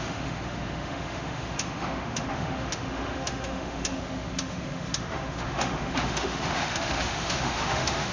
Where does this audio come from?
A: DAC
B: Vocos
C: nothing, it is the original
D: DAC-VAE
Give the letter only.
D